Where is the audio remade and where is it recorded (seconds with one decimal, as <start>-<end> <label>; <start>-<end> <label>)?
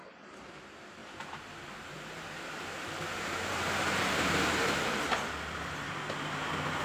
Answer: 0.0-1.0 recorded; 1.0-5.1 remade; 5.1-6.8 recorded